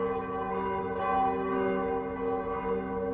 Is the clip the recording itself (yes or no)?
yes